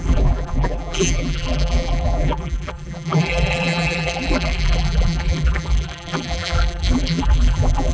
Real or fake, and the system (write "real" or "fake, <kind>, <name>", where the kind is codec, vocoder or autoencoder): fake, vocoder, BigVGAN v2